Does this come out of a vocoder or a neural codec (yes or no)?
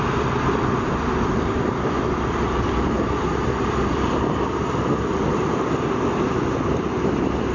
yes